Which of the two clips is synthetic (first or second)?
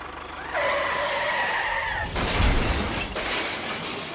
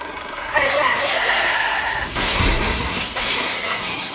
second